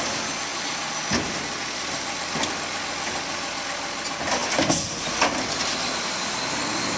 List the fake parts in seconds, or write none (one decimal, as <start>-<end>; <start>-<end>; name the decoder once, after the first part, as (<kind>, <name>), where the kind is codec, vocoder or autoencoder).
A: none